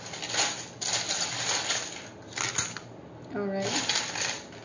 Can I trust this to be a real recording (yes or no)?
yes